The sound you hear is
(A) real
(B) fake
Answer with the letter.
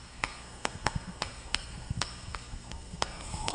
B